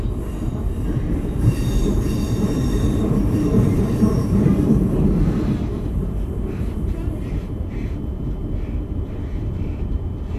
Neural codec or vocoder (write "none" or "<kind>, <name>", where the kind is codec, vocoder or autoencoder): vocoder, BigVGAN v2